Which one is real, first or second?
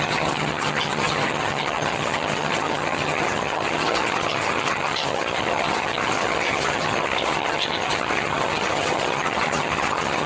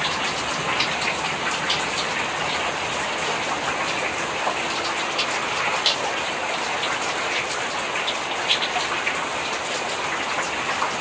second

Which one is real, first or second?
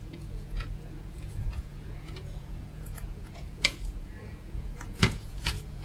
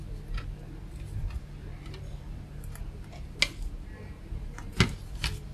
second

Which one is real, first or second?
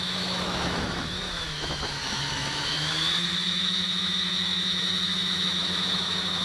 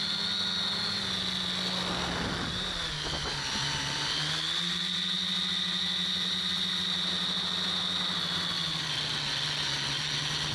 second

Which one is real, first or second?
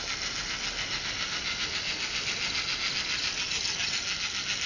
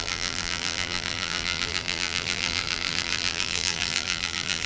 first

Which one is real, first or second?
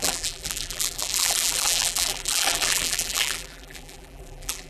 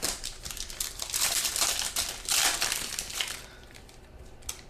second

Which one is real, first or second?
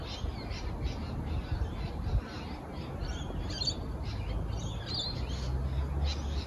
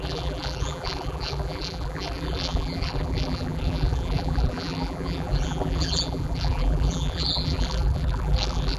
first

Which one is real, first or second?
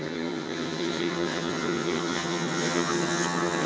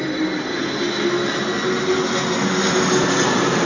second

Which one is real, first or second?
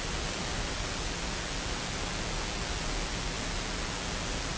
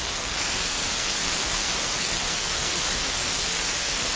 first